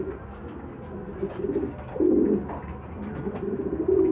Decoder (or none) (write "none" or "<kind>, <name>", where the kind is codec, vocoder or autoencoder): none